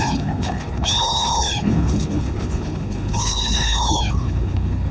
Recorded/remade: remade